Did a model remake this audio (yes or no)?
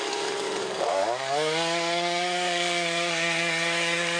yes